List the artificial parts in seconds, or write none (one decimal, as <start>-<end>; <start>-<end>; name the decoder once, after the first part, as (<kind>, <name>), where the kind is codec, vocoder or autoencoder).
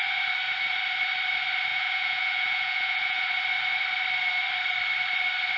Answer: 1.7-3.3 (vocoder, Vocos)